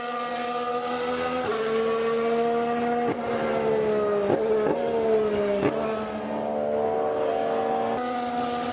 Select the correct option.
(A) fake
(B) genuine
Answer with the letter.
B